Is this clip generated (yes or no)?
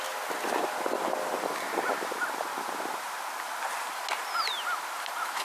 no